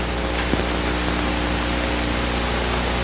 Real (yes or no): yes